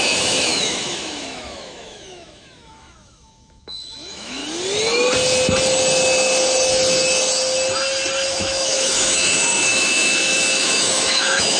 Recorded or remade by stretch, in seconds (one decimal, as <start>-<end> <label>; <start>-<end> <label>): 0.0-4.4 remade; 4.4-8.3 recorded; 8.3-11.6 remade